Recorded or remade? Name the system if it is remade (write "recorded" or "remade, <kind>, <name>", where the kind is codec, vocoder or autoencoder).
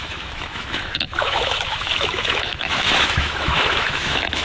remade, autoencoder, DAC-VAE